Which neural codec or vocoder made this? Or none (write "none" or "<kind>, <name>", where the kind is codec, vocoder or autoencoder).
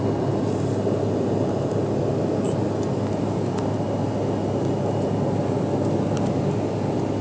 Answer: none